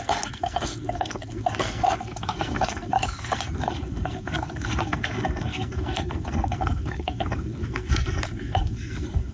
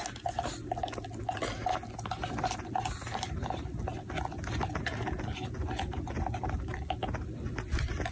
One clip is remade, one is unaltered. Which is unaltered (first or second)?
second